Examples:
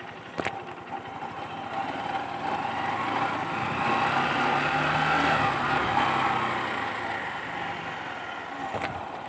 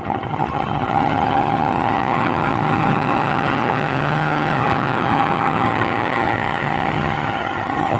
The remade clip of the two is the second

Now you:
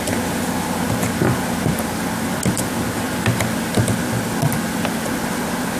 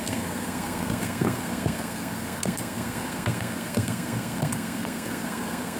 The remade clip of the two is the second